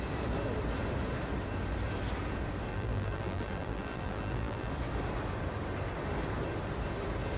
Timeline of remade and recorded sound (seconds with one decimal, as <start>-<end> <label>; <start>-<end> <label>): 0.0-2.7 recorded; 2.7-4.7 remade; 4.7-7.4 recorded